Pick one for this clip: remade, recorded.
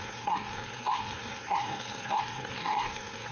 remade